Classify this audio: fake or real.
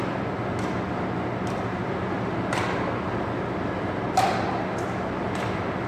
real